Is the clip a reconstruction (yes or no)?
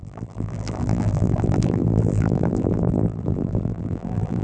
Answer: yes